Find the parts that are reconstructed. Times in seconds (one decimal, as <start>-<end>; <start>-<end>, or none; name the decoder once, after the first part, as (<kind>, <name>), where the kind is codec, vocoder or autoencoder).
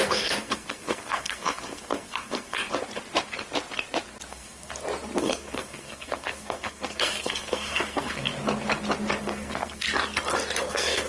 0.0-2.6 (codec, SNAC); 4.3-4.7; 5.2-8.3; 9.2-9.9; 10.7-11.1